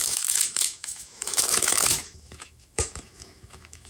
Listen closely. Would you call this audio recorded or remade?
remade